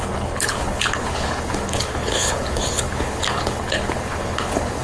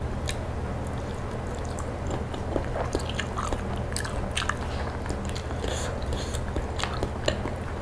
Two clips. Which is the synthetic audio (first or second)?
first